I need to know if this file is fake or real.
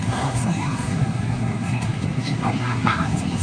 fake